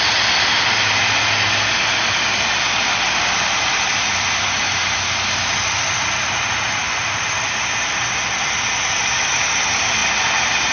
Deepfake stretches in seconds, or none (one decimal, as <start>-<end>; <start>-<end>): 3.9-9.2; 10.0-10.7